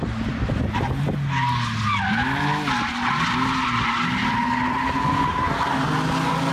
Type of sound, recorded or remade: recorded